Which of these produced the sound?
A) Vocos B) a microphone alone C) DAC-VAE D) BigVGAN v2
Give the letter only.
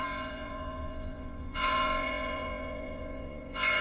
A